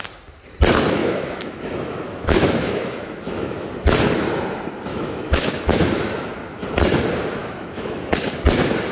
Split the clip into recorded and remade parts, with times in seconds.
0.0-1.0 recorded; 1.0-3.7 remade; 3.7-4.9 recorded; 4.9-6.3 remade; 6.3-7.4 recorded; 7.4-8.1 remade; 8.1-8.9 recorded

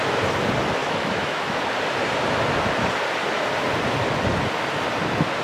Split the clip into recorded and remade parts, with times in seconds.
0.0-0.8 recorded; 0.8-1.6 remade; 1.6-5.4 recorded

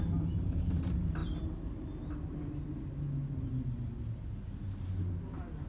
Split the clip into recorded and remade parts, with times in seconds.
0.0-5.7 recorded

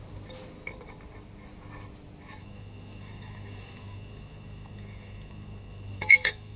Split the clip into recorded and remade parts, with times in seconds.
0.0-2.4 recorded; 2.4-6.6 remade